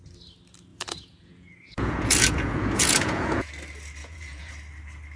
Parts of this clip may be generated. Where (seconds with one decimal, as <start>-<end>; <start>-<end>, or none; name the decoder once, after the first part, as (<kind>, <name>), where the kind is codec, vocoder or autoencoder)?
0.7-3.5 (vocoder, Vocos); 4.0-4.5